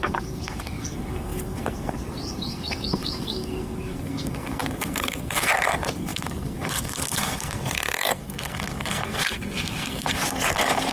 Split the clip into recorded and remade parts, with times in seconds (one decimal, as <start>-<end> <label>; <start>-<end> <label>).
0.0-10.9 remade